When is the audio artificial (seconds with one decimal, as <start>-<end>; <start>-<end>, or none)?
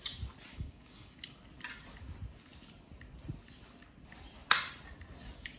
0.5-1.2